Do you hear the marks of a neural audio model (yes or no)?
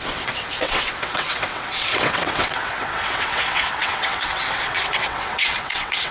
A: yes